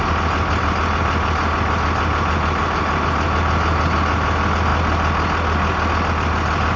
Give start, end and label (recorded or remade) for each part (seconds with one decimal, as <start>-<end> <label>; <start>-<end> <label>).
0.0-6.8 recorded